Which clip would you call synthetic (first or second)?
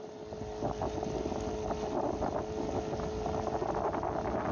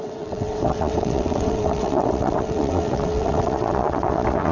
second